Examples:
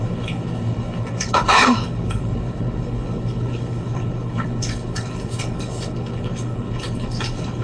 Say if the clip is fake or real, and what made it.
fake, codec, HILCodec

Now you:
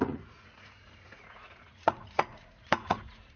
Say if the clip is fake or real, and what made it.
fake, vocoder, Vocos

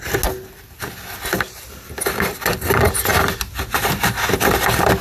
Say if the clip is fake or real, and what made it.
real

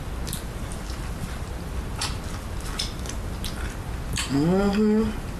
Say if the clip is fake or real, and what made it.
real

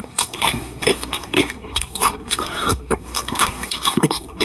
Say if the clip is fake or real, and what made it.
fake, codec, SNAC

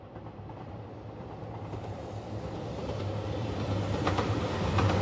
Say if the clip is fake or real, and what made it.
fake, vocoder, BigVGAN v2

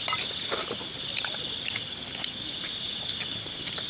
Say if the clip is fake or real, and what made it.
real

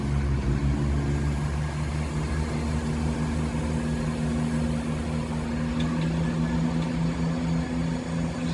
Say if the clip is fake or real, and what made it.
real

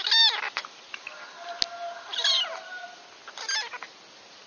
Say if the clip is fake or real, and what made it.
real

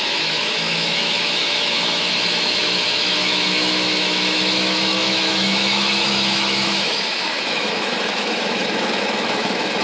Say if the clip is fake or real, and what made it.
fake, autoencoder, DAC-VAE